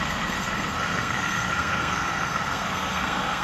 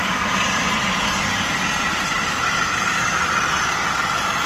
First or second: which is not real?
first